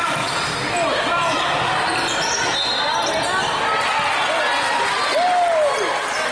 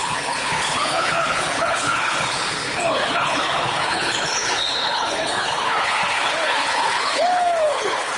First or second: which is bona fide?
first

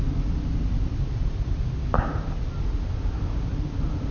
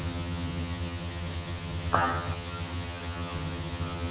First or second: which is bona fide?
first